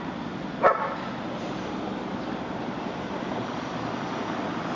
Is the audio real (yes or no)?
yes